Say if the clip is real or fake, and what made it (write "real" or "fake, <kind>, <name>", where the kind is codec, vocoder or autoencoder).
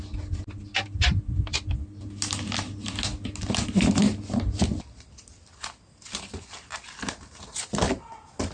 real